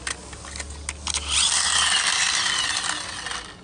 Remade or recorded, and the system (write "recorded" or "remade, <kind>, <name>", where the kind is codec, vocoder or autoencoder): recorded